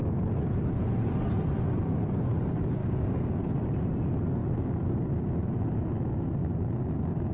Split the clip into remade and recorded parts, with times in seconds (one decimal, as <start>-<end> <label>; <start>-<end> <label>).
0.0-2.8 recorded; 2.8-3.3 remade; 3.3-7.3 recorded